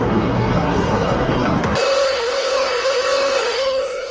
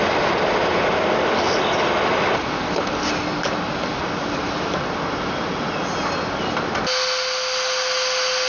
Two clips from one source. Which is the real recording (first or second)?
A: second